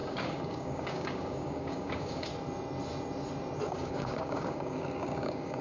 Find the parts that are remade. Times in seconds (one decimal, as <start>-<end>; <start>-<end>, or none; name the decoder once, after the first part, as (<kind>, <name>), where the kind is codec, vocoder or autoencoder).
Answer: 0.0-2.3 (codec, DAC); 3.7-5.6